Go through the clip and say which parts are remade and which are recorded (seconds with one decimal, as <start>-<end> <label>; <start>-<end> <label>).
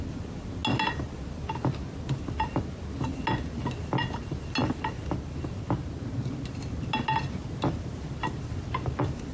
0.0-9.3 recorded